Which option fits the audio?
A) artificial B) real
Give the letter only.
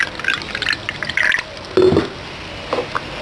B